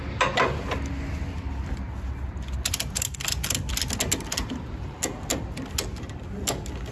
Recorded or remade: recorded